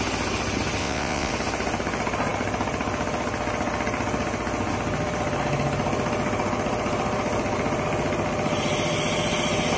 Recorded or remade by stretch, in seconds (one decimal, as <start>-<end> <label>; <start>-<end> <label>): 0.0-0.8 recorded; 0.8-1.3 remade; 1.3-9.8 recorded